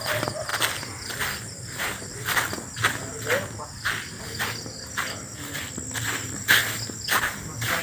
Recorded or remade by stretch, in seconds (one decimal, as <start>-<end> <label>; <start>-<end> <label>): 0.0-7.8 recorded